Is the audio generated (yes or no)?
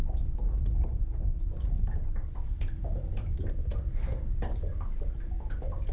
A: no